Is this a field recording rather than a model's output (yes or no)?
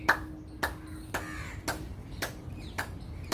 yes